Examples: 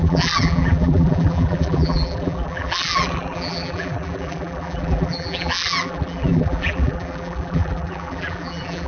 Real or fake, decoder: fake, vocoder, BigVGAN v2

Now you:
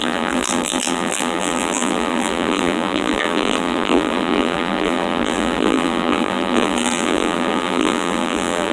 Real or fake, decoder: fake, vocoder, BigVGAN v2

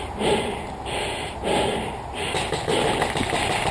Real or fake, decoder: real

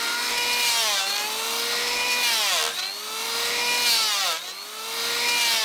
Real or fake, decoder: real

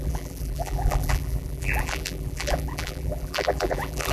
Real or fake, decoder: fake, vocoder, BigVGAN v2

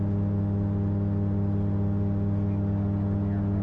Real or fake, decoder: real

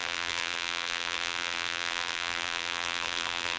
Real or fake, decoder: fake, vocoder, BigVGAN v2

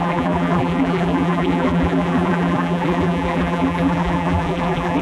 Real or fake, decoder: fake, vocoder, BigVGAN v2